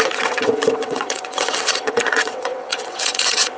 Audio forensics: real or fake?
fake